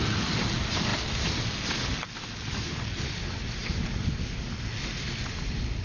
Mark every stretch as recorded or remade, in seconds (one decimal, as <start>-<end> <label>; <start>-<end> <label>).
0.0-5.8 recorded